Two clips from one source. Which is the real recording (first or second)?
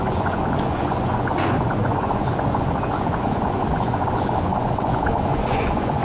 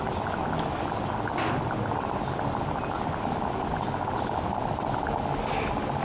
second